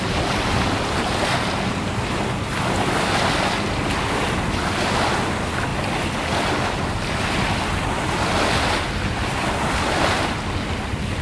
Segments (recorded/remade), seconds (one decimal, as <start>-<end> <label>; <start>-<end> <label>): 0.0-11.2 recorded